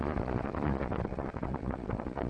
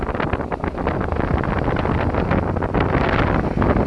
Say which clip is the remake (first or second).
first